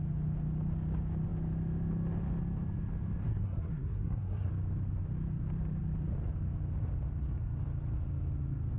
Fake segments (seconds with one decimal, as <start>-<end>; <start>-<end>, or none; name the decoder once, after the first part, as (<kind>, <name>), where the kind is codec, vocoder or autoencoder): 3.3-4.5 (codec, SNAC)